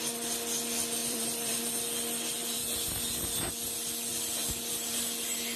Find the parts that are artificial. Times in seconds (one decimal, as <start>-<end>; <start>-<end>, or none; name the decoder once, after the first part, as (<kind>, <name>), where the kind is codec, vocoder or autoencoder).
1.0-1.6 (vocoder, BigVGAN v2); 2.4-3.2